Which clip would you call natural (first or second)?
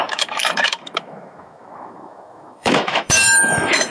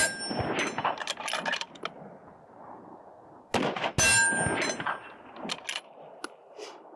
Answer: second